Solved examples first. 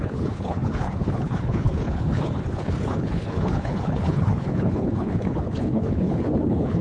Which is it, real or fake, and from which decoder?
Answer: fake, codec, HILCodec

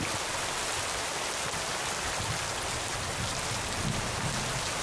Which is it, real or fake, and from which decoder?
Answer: real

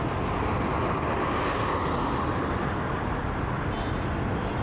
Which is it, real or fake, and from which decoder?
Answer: real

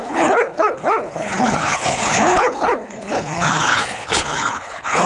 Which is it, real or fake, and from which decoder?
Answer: fake, codec, HILCodec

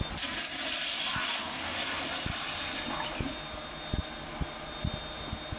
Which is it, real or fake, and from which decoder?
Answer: real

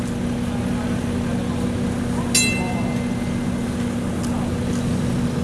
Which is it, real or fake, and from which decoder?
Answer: real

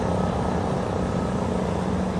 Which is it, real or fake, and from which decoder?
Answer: real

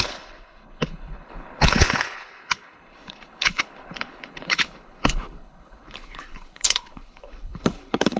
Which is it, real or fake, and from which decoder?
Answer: fake, codec, HILCodec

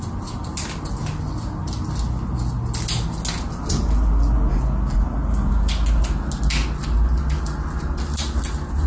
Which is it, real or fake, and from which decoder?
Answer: real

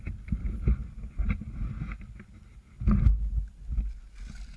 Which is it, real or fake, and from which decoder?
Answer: real